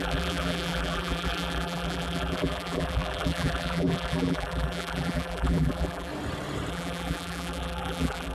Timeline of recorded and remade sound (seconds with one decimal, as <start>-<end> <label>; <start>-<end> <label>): 0.0-6.1 remade; 6.1-6.7 recorded; 6.7-8.3 remade